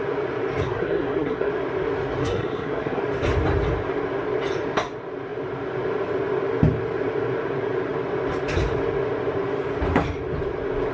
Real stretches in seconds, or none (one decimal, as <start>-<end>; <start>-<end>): 0.0-0.6; 1.5-2.2; 3.0-10.9